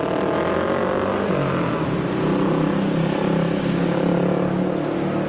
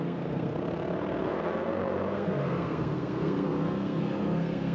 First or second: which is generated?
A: second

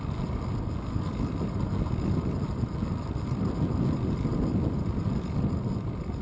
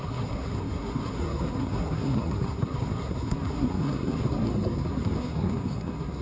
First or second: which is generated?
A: second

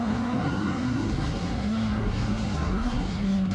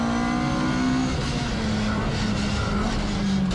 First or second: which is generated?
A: first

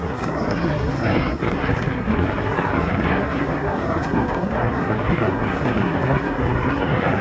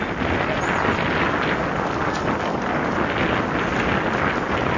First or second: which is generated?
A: first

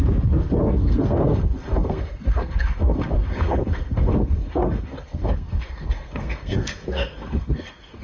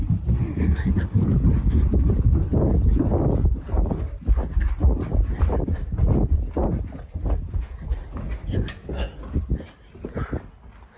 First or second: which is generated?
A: first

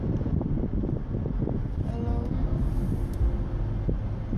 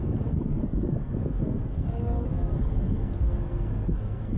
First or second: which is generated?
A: second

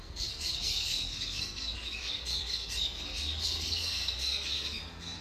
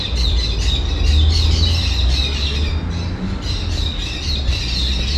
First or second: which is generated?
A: first